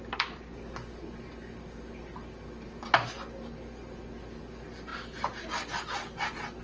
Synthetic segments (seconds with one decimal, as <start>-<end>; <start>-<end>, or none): none